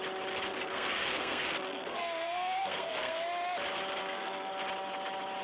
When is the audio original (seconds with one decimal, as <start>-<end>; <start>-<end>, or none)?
0.0-0.5; 3.2-4.0; 4.5-5.4